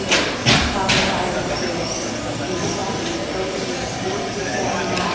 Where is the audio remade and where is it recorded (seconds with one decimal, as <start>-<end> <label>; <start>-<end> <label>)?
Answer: 0.0-5.1 recorded